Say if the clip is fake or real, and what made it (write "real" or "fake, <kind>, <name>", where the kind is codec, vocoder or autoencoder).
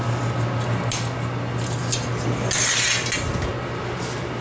real